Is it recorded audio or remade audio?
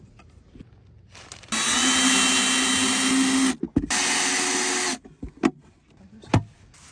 recorded